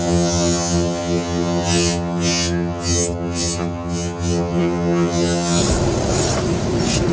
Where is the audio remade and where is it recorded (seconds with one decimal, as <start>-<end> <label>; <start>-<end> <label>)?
0.0-5.6 remade; 5.6-7.1 recorded